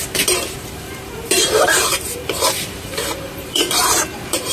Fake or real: fake